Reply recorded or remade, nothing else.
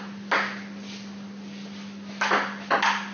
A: recorded